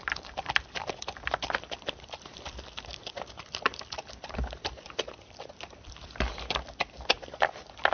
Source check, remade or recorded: remade